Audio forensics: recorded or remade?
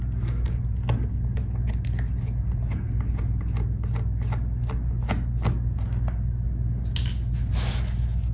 recorded